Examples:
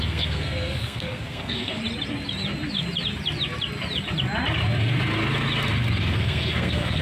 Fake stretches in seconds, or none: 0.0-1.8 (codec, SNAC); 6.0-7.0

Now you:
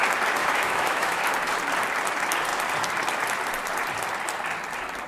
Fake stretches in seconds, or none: 0.4-1.2 (autoencoder, DAC-VAE)

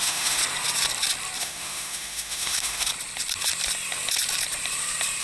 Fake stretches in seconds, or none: 0.0-0.4 (autoencoder, DAC-VAE); 1.4-2.9

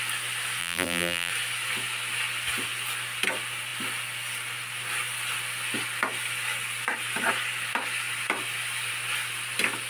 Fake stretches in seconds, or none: 0.6-1.3 (vocoder, BigVGAN v2)

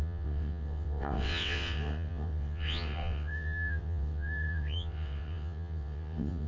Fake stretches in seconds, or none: 0.0-6.5 (vocoder, WaveNeXt)

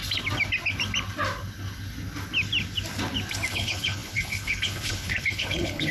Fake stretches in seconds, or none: 3.5-5.9 (codec, HILCodec)

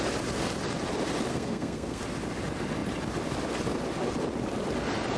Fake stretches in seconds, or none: 1.3-2.0 (codec, SNAC)

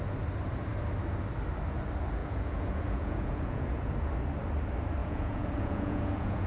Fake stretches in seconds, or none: 2.2-3.9 (vocoder, Vocos); 5.0-6.5